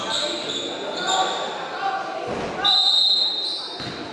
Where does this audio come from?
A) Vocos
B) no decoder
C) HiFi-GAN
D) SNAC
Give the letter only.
B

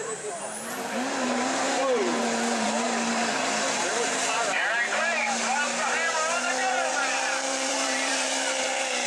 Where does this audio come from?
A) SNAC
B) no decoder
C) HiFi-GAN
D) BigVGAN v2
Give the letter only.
D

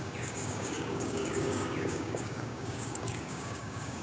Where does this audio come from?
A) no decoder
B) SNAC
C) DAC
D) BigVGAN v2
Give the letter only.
C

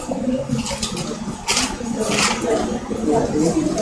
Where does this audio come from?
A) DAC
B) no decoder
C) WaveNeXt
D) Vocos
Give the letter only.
B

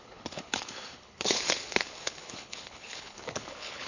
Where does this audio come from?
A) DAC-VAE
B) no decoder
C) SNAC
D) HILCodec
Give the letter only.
D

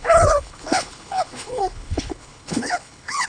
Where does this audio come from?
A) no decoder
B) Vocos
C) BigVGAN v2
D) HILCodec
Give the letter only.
D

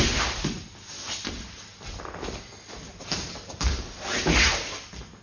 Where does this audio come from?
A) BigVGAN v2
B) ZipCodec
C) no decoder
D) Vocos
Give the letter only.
C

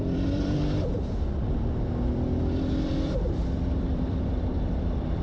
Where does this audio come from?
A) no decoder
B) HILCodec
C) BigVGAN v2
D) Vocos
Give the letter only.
C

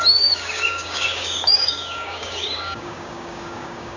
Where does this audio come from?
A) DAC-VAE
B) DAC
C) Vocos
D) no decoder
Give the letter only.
B